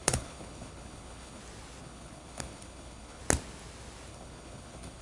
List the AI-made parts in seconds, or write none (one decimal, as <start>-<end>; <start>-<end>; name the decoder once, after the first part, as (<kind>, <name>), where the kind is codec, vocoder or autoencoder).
0.0-1.4 (codec, HILCodec); 1.8-3.2; 4.1-5.0

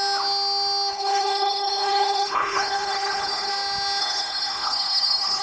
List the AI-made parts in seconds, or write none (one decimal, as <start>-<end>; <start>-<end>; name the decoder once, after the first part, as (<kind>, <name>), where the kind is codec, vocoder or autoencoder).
0.9-3.5 (codec, HILCodec); 4.0-5.4

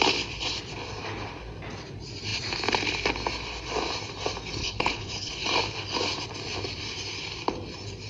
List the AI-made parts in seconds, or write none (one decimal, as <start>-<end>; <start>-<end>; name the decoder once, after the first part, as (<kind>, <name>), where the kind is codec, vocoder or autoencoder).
4.6-5.3 (codec, HILCodec)

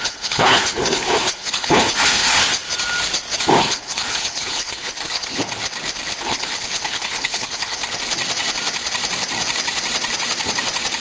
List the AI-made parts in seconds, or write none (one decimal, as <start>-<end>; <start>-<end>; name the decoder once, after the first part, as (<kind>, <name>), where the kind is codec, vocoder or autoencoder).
0.0-2.4 (codec, HILCodec); 3.6-5.4; 6.2-7.8

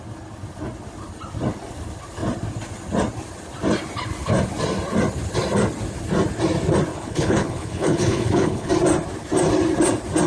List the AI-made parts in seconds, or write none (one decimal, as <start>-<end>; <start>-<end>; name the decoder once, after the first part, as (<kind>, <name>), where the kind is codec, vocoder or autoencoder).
6.9-8.7 (codec, HILCodec)

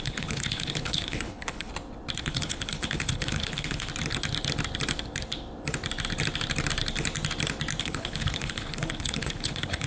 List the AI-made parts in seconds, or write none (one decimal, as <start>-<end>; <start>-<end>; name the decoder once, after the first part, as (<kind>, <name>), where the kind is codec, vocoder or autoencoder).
0.0-1.7 (codec, HILCodec); 2.2-3.9; 7.8-9.9